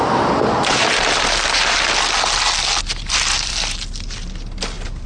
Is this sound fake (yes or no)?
no